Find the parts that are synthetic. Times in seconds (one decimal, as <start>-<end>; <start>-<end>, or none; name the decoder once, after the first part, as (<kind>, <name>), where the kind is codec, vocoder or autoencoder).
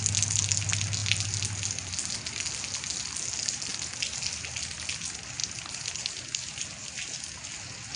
none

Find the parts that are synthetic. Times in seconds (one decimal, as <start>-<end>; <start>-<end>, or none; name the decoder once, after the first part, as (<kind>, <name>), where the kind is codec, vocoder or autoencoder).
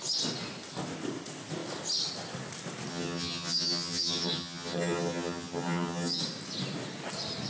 2.9-6.2 (vocoder, HiFi-GAN)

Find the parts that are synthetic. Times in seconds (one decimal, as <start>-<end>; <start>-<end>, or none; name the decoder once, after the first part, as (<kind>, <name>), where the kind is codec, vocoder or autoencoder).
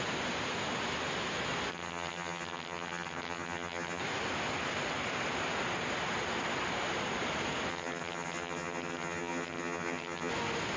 1.7-4.0 (vocoder, HiFi-GAN); 7.7-10.3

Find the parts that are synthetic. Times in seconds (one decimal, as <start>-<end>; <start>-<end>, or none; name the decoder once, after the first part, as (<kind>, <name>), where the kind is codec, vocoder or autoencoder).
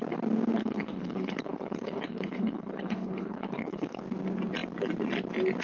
0.6-4.0 (codec, HILCodec)